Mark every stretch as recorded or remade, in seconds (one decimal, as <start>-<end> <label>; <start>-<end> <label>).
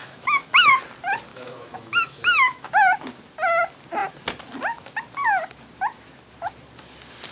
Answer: 0.0-0.7 remade; 0.7-1.3 recorded; 1.3-2.7 remade; 2.7-7.3 recorded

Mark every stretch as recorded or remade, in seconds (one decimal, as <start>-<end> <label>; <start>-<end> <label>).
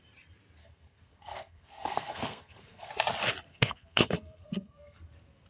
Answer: 0.0-0.6 recorded; 0.6-2.9 remade; 2.9-3.5 recorded; 3.5-5.0 remade; 5.0-5.5 recorded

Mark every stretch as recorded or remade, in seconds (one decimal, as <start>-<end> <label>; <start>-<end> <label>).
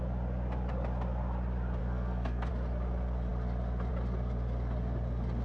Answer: 0.0-1.8 recorded; 1.8-2.5 remade; 2.5-5.4 recorded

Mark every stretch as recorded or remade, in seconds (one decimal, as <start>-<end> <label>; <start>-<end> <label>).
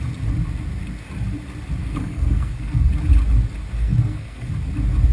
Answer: 0.0-1.8 recorded; 1.8-2.9 remade; 2.9-3.7 recorded; 3.7-4.5 remade; 4.5-5.1 recorded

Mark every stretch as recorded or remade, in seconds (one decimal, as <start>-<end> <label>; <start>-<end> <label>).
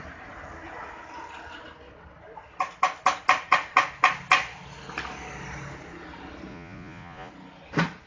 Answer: 0.0-6.5 recorded; 6.5-7.3 remade; 7.3-8.1 recorded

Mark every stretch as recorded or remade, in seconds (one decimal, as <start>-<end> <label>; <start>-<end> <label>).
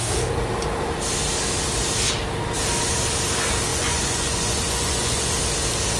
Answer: 0.0-3.7 recorded; 3.7-5.3 remade; 5.3-6.0 recorded